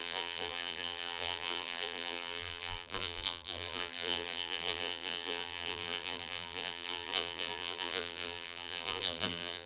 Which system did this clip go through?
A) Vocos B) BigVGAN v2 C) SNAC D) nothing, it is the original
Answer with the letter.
B